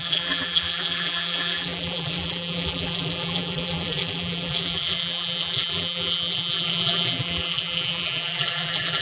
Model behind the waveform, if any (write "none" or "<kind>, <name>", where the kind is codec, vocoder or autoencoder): vocoder, BigVGAN v2